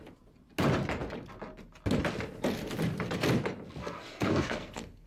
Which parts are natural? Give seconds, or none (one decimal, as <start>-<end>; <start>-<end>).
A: 0.0-3.8